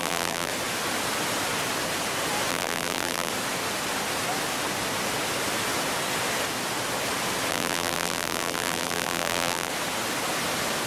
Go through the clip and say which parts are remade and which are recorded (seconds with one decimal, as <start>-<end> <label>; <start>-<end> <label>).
0.0-0.5 remade; 0.5-2.5 recorded; 2.5-3.3 remade; 3.3-7.5 recorded; 7.5-9.7 remade; 9.7-10.9 recorded